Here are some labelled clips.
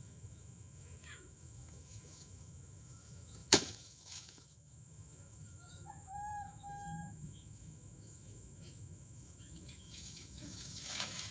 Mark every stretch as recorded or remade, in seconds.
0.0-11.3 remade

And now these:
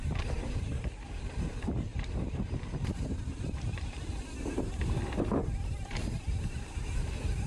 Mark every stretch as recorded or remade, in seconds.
0.0-1.9 recorded; 1.9-4.6 remade; 4.6-7.5 recorded

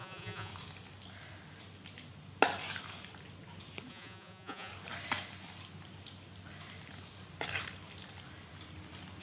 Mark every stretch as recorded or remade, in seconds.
0.0-0.5 remade; 0.5-3.9 recorded; 3.9-4.7 remade; 4.7-9.2 recorded

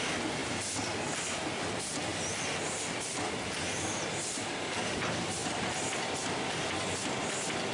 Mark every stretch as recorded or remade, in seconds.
0.0-7.7 recorded

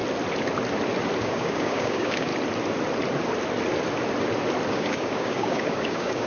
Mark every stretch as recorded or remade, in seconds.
0.0-1.2 recorded; 1.2-2.3 remade; 2.3-4.7 recorded; 4.7-6.3 remade

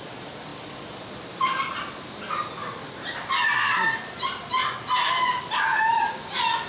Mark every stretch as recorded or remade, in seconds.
0.0-6.7 recorded